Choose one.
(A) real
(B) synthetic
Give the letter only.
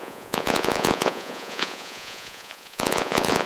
B